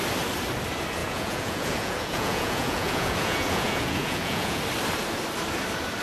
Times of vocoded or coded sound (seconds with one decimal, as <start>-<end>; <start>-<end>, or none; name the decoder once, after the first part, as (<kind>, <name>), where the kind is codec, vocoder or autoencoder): 1.0-4.6 (vocoder, Vocos)